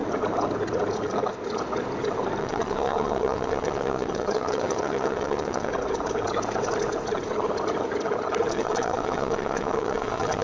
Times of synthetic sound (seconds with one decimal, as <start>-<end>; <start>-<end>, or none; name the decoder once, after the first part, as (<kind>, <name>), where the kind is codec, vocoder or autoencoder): 2.4-5.7 (vocoder, WaveNeXt); 8.5-10.4